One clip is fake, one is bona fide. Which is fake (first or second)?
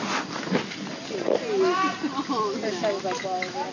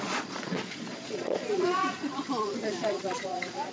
second